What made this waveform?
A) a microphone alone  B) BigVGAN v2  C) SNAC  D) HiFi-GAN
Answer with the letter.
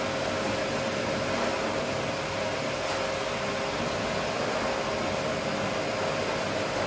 A